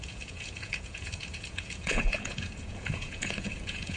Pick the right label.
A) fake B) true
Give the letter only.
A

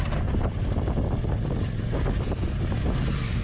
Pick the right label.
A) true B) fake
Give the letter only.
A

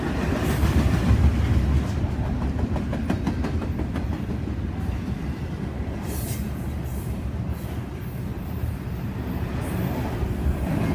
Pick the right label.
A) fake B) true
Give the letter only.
B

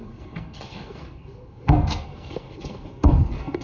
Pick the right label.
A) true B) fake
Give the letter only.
B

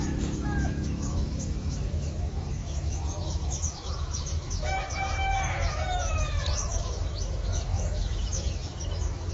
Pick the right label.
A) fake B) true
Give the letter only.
A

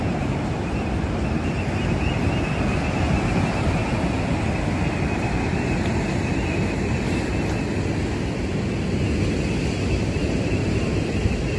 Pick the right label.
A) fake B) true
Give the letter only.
B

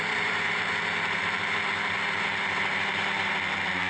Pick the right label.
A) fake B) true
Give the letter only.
A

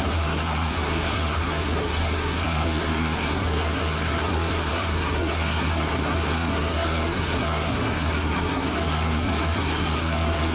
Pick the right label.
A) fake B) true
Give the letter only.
A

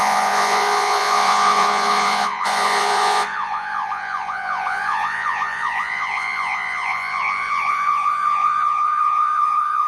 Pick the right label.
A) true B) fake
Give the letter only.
B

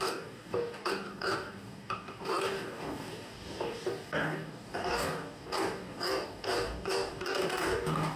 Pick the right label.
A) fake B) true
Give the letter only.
A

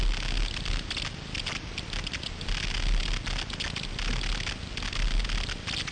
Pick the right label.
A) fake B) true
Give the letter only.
B